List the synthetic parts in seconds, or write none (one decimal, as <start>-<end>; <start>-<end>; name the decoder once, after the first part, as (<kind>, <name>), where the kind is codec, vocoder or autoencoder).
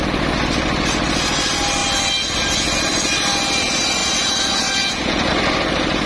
4.0-5.3 (vocoder, Vocos)